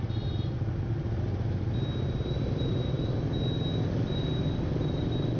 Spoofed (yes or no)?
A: no